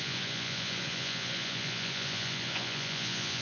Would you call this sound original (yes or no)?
no